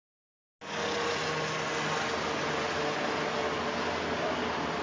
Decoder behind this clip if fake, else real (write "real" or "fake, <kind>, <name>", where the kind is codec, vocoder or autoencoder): real